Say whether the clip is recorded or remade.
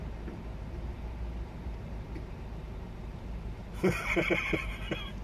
recorded